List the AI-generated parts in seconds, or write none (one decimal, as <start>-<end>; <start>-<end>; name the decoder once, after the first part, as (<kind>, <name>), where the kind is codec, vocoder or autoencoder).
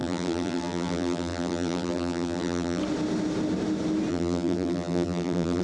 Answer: 0.0-2.8 (vocoder, BigVGAN v2); 4.1-5.6